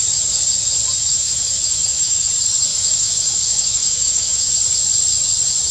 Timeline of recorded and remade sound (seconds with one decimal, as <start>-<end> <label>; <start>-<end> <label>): 0.0-1.0 recorded; 1.0-2.3 remade; 2.3-2.7 recorded; 2.7-4.5 remade; 4.5-5.7 recorded

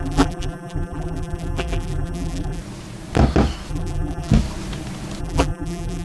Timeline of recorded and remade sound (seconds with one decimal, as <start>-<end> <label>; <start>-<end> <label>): 0.0-2.6 remade; 2.6-3.7 recorded; 3.7-4.3 remade; 4.3-5.2 recorded; 5.2-6.0 remade

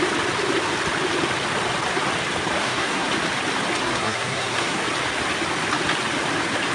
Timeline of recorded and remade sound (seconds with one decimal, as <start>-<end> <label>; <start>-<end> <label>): 0.0-2.6 recorded; 2.6-3.1 remade; 3.1-3.8 recorded; 3.8-4.8 remade; 4.8-6.7 recorded